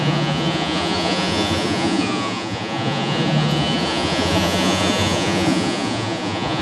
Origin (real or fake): fake